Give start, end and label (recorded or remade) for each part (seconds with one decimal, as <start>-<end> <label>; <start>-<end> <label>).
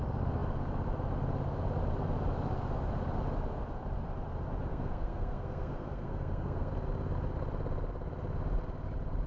0.0-4.7 recorded; 4.7-6.7 remade; 6.7-9.3 recorded